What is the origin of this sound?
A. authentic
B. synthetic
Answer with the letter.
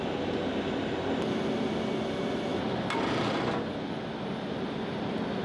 A